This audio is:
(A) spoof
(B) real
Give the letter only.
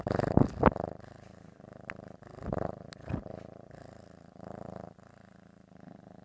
B